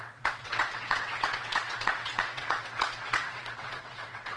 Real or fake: fake